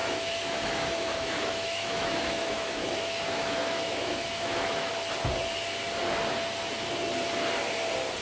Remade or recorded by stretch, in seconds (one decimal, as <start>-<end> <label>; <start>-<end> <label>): 0.0-4.9 remade; 4.9-8.2 recorded